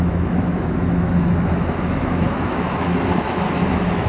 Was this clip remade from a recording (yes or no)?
yes